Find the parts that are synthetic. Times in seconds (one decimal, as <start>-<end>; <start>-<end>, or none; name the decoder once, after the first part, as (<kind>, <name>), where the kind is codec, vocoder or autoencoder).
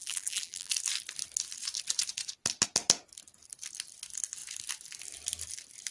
0.0-0.7 (vocoder, BigVGAN v2)